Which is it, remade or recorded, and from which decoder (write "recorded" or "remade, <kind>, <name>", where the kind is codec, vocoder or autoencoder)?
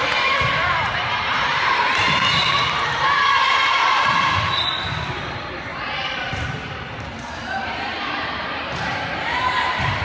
remade, vocoder, BigVGAN v2